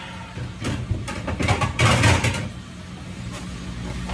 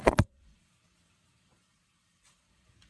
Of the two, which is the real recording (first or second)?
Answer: first